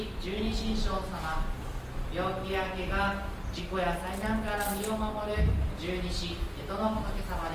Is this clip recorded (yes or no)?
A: yes